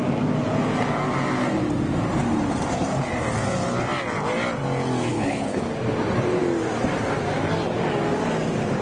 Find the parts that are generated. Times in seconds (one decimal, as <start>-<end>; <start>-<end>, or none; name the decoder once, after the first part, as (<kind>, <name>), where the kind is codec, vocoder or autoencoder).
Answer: 5.1-5.6 (codec, HILCodec)